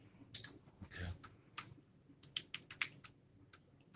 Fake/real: real